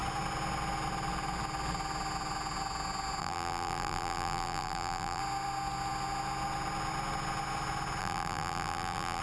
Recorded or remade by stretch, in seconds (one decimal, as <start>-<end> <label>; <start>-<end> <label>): 0.0-3.2 recorded; 3.2-5.2 remade; 5.2-8.0 recorded; 8.0-9.2 remade